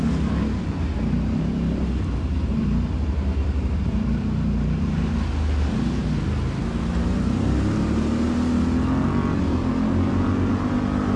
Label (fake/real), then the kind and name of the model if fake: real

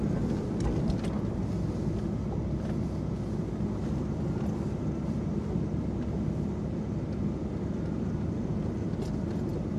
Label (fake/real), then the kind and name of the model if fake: real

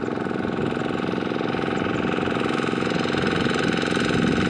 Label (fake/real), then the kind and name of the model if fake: real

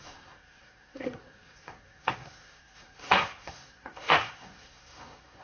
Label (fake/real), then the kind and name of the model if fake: fake, codec, SNAC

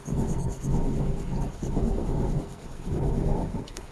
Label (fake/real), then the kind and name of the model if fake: fake, codec, SNAC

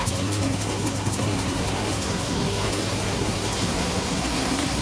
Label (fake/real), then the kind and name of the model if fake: fake, codec, SNAC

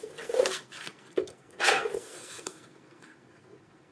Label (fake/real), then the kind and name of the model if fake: fake, codec, SNAC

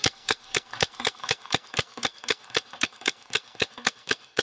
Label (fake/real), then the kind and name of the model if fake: fake, codec, SNAC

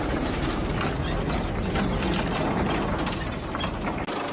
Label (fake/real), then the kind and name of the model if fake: real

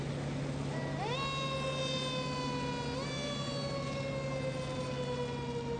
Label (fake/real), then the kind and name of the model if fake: real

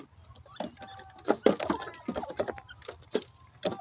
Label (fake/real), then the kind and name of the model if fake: real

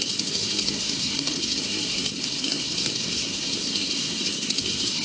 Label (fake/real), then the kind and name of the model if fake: fake, codec, SNAC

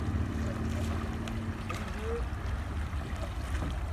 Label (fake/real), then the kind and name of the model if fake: real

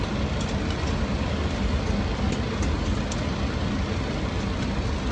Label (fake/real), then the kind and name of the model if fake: real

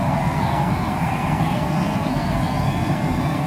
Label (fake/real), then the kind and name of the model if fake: fake, codec, SNAC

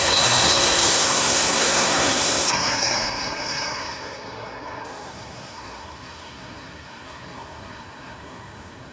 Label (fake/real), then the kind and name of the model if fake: fake, codec, SNAC